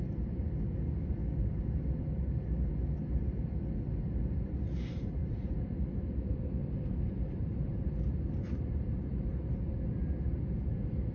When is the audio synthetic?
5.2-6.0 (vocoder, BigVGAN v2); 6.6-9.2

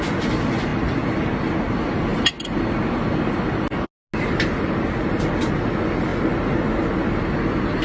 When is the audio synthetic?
none

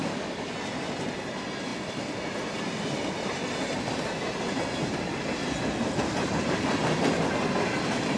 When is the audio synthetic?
0.0-0.5 (codec, DAC)

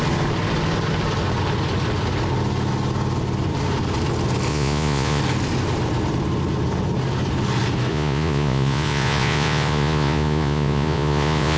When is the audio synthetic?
4.5-5.2 (vocoder, Vocos); 7.9-11.6

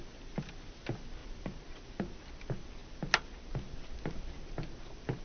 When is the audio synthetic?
none

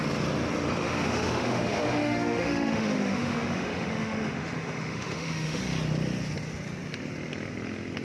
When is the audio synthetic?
0.8-5.6 (autoencoder, DAC-VAE)